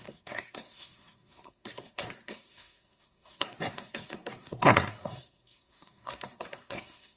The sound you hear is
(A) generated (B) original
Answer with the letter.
A